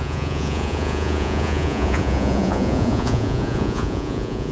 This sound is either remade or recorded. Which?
remade